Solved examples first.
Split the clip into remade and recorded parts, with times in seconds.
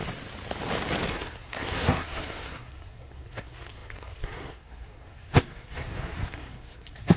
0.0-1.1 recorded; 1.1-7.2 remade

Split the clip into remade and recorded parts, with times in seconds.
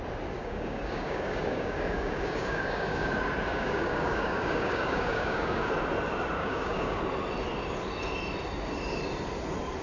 0.0-0.4 recorded; 0.4-3.1 remade; 3.1-3.5 recorded; 3.5-5.7 remade; 5.7-6.4 recorded; 6.4-7.0 remade; 7.0-9.8 recorded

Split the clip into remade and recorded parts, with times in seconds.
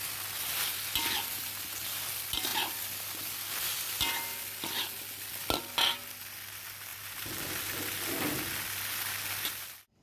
0.0-10.0 recorded